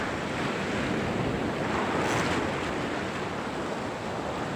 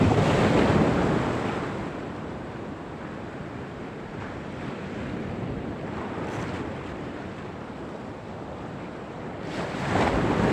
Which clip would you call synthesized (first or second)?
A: second